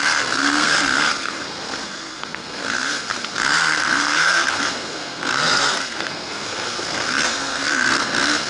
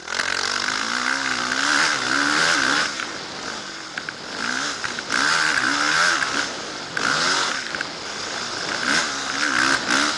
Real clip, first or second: second